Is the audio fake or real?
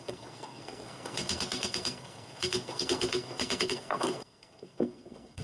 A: fake